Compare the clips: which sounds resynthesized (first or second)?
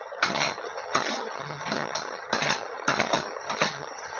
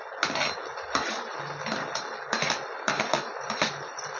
first